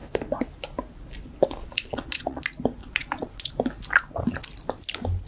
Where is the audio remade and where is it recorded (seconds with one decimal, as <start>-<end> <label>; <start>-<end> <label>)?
0.0-1.6 recorded; 1.6-2.4 remade; 2.4-2.8 recorded; 2.8-3.5 remade; 3.5-5.3 recorded